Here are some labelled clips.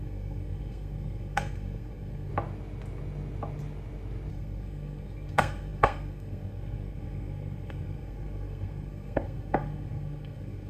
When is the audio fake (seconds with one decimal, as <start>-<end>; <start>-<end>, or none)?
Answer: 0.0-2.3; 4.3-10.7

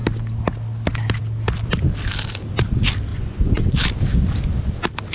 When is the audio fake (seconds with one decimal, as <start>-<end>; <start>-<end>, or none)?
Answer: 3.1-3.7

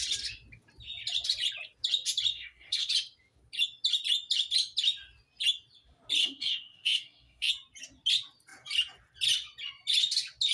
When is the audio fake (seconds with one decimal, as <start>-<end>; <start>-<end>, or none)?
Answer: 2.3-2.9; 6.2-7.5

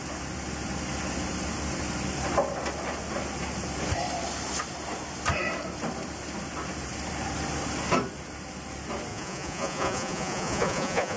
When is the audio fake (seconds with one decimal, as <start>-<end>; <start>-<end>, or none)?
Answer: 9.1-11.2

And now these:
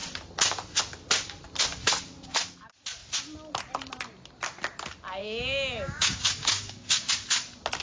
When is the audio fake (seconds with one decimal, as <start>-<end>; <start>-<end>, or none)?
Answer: 5.2-7.1

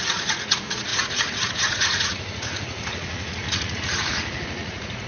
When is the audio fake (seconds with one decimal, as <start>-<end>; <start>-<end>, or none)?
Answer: 0.0-5.1